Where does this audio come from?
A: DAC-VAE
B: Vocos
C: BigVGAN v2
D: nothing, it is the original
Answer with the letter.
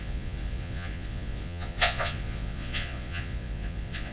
B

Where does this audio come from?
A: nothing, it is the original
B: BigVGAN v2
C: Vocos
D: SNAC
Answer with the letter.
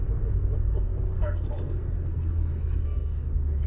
D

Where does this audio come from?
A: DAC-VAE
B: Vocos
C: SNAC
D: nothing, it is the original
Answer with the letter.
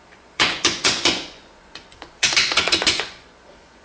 B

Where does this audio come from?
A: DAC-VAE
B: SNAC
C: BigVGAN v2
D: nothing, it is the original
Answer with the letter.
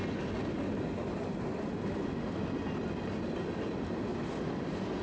D